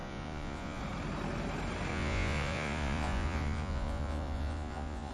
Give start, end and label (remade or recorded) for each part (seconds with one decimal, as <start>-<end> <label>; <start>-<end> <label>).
0.0-0.8 remade; 0.8-1.9 recorded; 1.9-5.1 remade